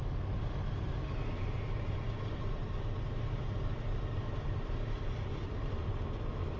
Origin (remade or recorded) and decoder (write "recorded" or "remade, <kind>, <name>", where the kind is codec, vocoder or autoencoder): recorded